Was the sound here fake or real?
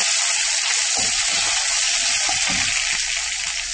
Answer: real